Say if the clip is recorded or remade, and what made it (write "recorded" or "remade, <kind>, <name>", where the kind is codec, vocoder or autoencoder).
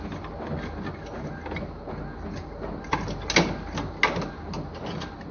recorded